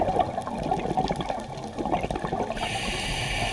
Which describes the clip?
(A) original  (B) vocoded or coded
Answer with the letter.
A